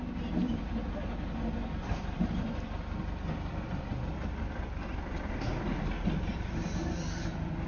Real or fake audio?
real